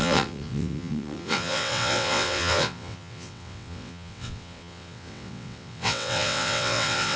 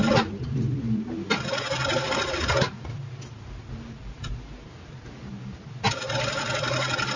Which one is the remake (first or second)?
first